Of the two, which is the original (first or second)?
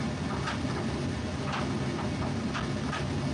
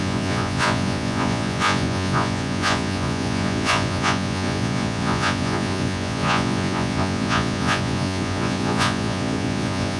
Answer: first